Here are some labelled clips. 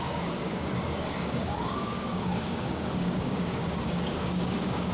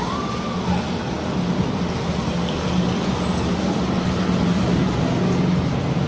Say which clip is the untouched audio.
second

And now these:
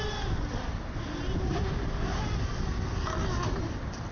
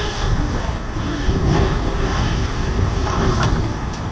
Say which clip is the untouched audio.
first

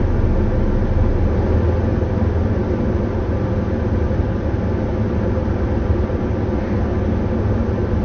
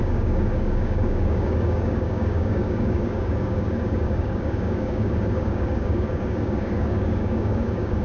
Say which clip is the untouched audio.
first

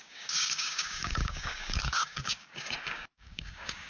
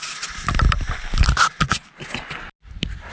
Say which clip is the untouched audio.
second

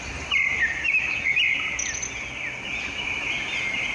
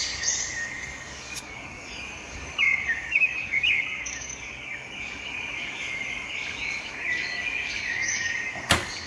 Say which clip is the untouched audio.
first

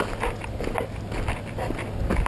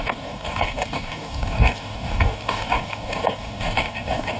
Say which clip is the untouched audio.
first